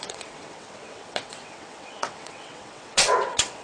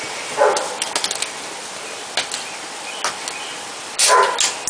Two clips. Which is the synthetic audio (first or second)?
first